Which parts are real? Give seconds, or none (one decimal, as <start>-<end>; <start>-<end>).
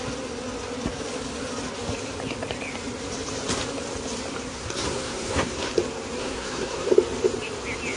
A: 0.0-4.5; 5.7-6.2; 6.9-8.0